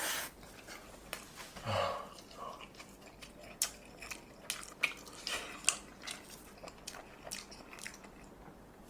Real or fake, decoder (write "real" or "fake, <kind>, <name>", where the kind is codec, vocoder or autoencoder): real